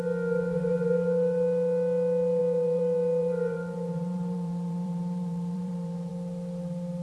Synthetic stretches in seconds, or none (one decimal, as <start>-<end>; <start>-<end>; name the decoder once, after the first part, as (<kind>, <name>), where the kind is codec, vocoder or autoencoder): 2.4-6.1 (vocoder, BigVGAN v2)